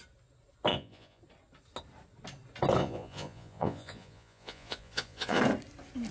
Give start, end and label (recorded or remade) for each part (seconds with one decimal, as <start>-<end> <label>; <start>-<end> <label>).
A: 0.0-0.7 recorded; 0.7-1.2 remade; 1.2-2.8 recorded; 2.8-5.4 remade; 5.4-6.1 recorded